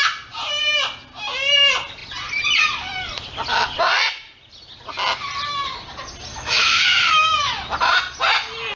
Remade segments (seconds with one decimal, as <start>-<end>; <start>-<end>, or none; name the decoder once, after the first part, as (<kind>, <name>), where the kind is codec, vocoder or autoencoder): 6.3-7.5 (autoencoder, DAC-VAE)